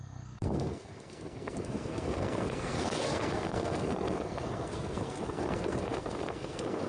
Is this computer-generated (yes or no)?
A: yes